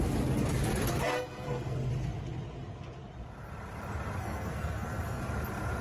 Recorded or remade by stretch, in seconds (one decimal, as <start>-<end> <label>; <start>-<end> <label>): 0.0-0.9 recorded; 0.9-1.9 remade; 1.9-4.2 recorded; 4.2-5.2 remade; 5.2-5.8 recorded